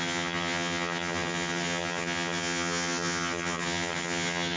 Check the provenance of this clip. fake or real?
fake